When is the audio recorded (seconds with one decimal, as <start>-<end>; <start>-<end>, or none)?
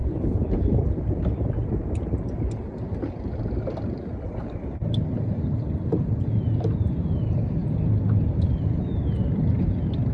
0.8-10.1